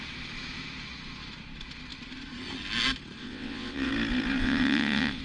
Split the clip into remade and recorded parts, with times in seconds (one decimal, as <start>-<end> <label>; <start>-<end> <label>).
0.0-3.2 recorded; 3.2-3.9 remade; 3.9-4.4 recorded; 4.4-5.2 remade